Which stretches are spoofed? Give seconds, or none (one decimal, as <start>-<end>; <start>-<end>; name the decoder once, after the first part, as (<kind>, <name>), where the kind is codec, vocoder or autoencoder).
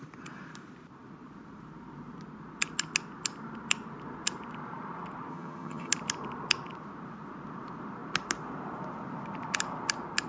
5.3-5.9 (vocoder, HiFi-GAN)